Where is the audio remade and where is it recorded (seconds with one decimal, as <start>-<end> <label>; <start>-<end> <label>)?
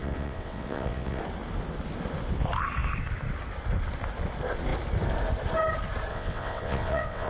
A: 0.0-1.2 remade; 1.2-6.1 recorded; 6.1-7.3 remade